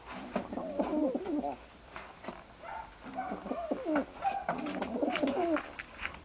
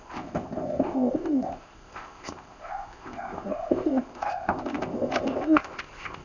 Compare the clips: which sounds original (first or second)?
first